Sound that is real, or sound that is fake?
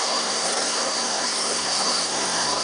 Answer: fake